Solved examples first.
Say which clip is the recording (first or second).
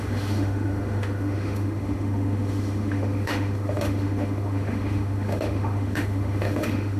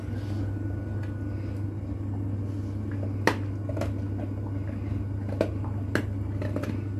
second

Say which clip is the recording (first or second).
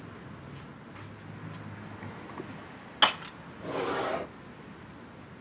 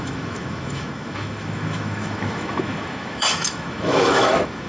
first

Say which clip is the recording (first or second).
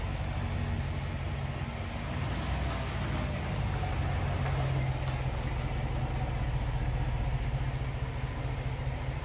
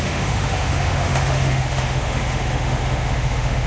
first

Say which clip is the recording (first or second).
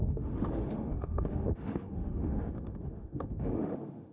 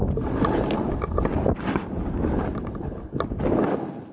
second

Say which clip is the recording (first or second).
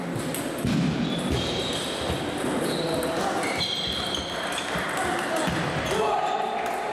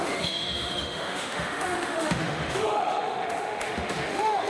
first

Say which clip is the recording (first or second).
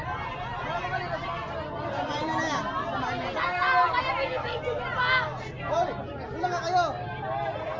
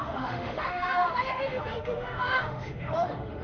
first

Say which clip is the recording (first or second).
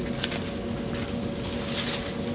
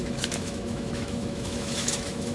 first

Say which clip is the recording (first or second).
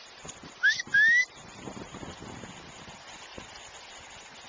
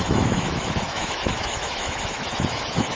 first